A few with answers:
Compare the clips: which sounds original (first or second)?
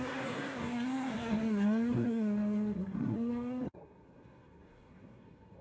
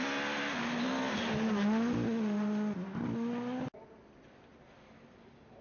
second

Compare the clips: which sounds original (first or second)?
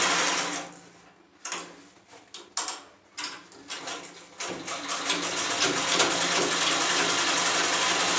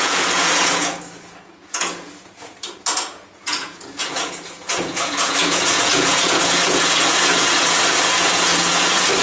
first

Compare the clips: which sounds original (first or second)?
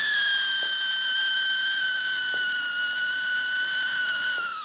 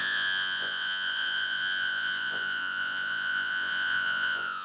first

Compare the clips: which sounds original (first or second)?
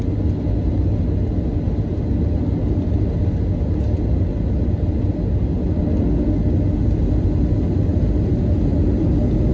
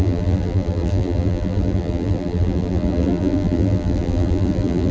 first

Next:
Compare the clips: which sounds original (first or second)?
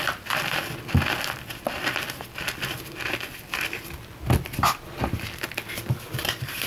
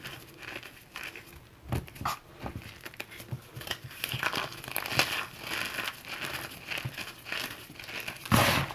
second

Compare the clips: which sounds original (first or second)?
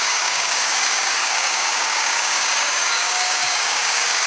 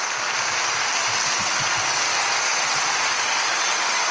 second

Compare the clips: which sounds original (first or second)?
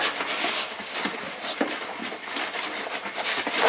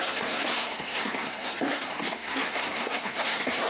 first